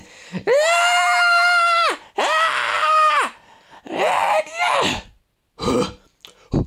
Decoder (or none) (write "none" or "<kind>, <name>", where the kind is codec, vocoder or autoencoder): none